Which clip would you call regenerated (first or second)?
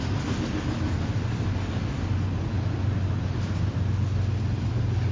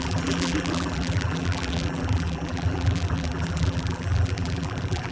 second